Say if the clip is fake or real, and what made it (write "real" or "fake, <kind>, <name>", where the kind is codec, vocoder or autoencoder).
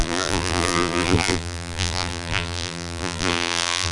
fake, vocoder, BigVGAN v2